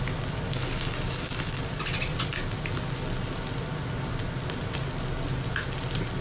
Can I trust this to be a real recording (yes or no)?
yes